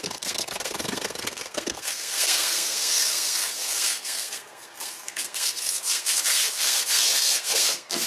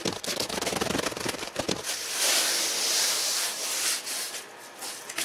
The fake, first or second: first